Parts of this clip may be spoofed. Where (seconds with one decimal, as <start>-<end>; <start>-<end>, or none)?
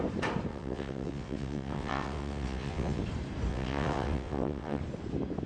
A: 0.5-3.0; 3.5-4.8